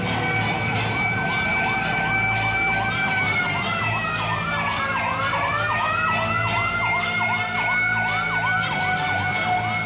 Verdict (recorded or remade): recorded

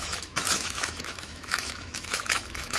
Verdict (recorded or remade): remade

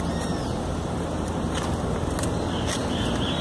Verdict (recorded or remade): recorded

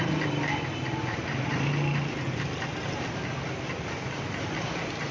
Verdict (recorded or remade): recorded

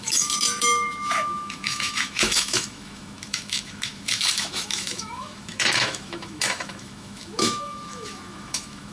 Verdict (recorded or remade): remade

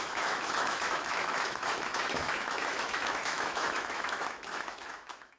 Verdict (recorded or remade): remade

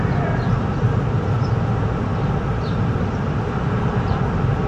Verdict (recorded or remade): recorded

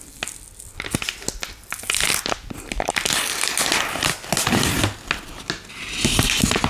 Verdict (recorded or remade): recorded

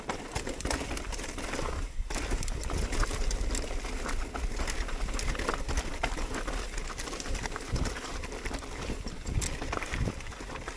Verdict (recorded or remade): recorded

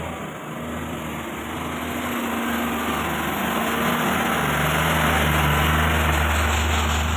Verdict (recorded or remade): recorded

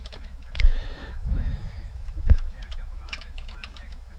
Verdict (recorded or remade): remade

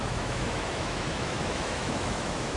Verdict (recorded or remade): remade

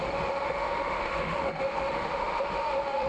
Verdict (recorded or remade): remade